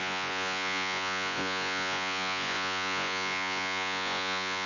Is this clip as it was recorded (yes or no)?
no